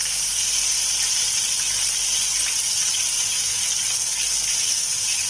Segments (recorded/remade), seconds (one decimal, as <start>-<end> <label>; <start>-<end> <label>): 0.0-3.2 recorded; 3.2-3.6 remade; 3.6-4.6 recorded; 4.6-5.3 remade